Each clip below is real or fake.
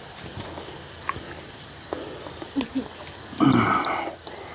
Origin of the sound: real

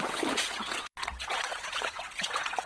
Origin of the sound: fake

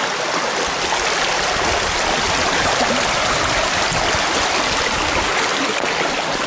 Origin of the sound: real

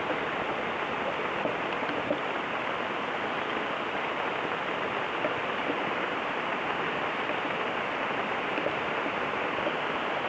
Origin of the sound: fake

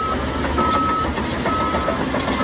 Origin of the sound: real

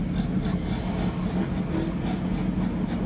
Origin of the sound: real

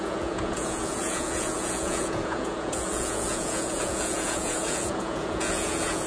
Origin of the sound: fake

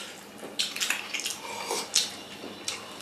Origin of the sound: real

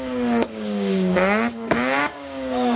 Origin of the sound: fake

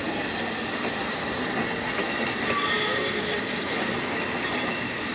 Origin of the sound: real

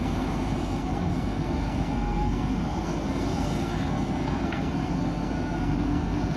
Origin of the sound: fake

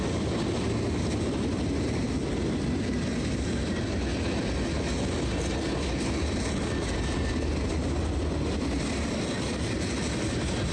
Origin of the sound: real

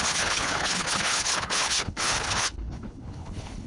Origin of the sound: fake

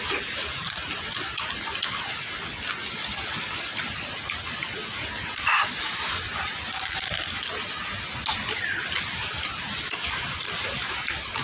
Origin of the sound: real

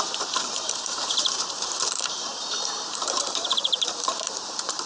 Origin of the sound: fake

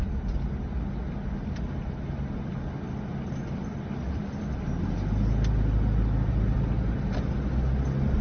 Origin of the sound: real